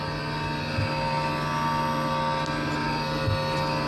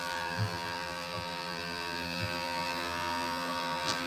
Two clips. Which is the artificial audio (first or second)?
second